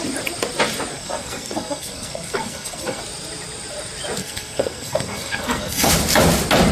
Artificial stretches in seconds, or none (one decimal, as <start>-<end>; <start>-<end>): 0.9-3.0; 4.2-5.9